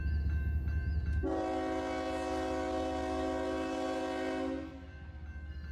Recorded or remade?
recorded